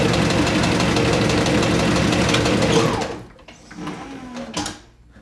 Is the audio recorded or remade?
recorded